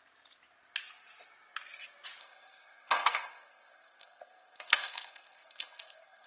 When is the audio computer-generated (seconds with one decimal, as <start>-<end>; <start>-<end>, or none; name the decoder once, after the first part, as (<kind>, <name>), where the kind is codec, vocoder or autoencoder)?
2.2-6.3 (codec, SNAC)